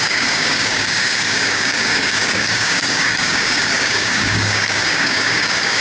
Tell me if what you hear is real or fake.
fake